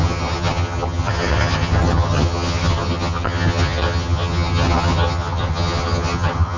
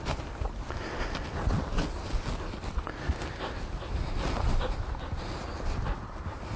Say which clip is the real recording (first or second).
second